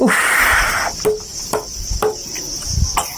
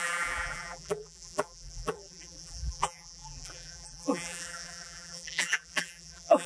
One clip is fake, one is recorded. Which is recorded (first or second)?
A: first